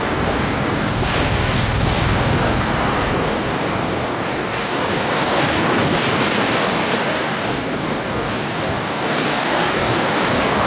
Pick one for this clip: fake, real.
fake